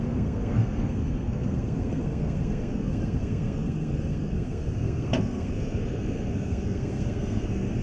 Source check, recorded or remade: remade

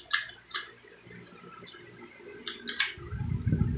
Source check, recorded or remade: recorded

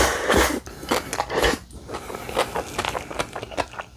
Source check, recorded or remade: recorded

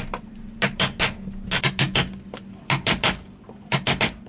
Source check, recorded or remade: recorded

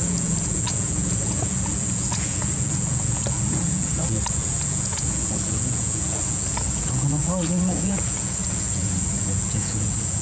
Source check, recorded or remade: remade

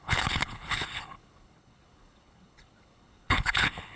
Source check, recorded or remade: remade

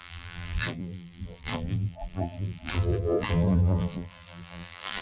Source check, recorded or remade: remade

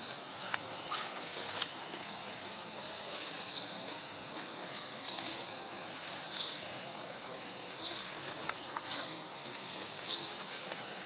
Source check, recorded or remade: remade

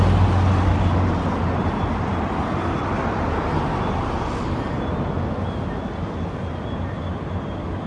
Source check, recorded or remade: recorded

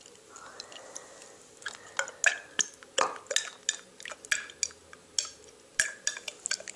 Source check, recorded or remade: recorded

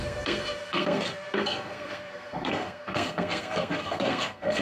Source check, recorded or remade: remade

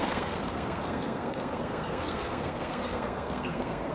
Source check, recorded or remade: remade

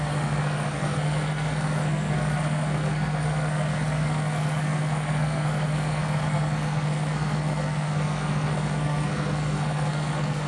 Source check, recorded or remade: remade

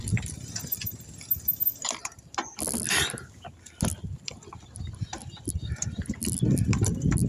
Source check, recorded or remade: recorded